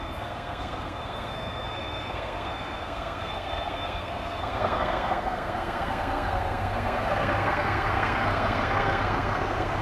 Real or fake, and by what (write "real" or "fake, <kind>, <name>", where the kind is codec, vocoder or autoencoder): fake, codec, SNAC